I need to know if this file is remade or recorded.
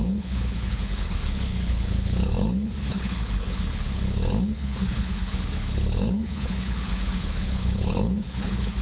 remade